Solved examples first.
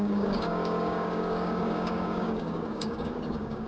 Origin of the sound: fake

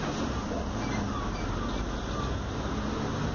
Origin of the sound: real